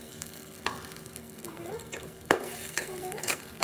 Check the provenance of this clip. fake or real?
fake